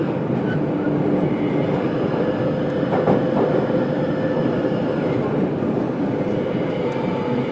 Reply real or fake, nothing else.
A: real